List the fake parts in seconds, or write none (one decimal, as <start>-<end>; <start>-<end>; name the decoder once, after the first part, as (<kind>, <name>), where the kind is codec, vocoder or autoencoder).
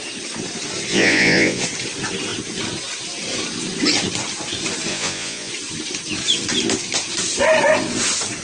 0.9-1.6 (vocoder, Vocos); 4.9-5.5